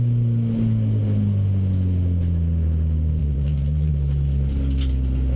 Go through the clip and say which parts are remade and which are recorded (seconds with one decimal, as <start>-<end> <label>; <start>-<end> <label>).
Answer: 0.0-3.2 recorded; 3.2-3.9 remade; 3.9-5.4 recorded